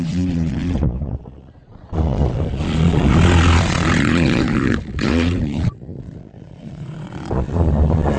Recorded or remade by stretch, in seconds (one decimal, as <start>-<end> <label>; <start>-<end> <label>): 0.0-8.2 remade